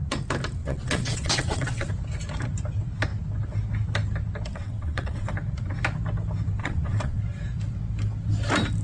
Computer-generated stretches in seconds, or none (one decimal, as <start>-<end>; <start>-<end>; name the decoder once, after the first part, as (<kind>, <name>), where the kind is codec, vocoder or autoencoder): 0.6-1.9 (vocoder, WaveNeXt); 4.5-5.3; 6.6-7.2